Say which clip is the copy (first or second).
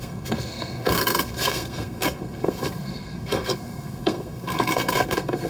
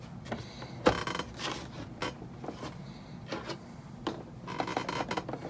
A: first